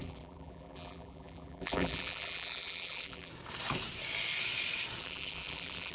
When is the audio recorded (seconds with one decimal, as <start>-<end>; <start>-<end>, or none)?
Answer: 3.3-5.0